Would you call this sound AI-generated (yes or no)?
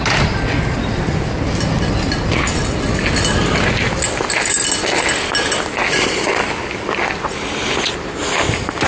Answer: no